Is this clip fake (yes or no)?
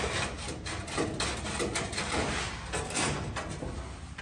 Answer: no